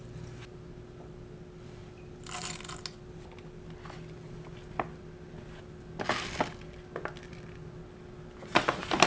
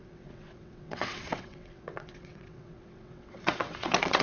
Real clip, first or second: first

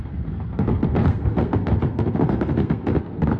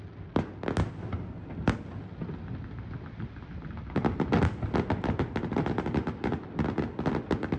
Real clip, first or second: second